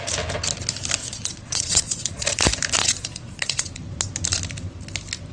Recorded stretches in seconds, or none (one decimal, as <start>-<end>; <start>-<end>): 0.0-1.0; 2.4-2.8; 3.8-5.3